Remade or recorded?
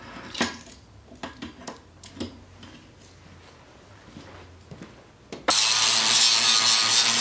recorded